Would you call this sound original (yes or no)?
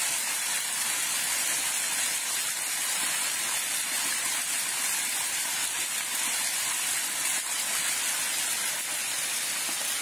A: yes